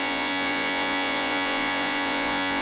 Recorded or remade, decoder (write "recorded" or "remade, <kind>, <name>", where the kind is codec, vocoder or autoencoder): remade, vocoder, Vocos